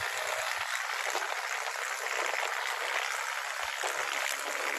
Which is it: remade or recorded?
recorded